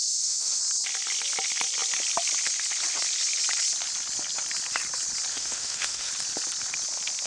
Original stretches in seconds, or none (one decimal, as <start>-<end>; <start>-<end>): 0.6-5.3; 6.1-7.3

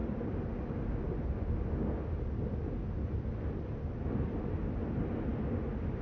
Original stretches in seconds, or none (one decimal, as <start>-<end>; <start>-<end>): 0.0-6.0

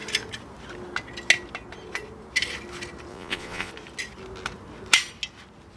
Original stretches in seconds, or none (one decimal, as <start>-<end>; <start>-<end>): 0.0-3.1; 3.7-5.8

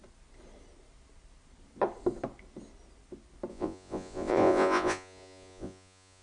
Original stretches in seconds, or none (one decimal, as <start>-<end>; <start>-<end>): 0.0-3.5

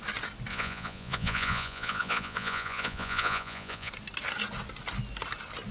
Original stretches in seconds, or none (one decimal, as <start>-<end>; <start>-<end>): 0.0-0.5; 3.9-5.7